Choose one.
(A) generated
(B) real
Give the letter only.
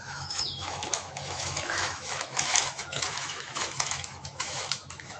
A